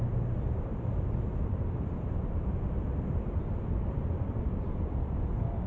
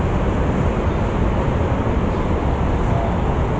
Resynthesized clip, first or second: first